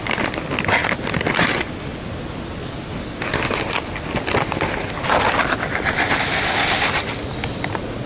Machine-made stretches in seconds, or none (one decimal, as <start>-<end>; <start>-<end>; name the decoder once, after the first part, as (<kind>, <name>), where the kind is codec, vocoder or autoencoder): 0.8-1.3 (vocoder, BigVGAN v2)